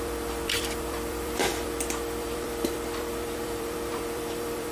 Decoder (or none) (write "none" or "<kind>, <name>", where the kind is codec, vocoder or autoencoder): vocoder, BigVGAN v2